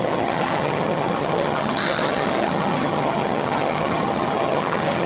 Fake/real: fake